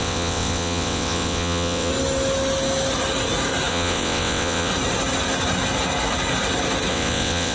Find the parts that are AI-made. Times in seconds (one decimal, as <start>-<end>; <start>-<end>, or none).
0.0-1.9; 3.7-4.7; 6.9-7.5